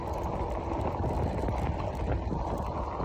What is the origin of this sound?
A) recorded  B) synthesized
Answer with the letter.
A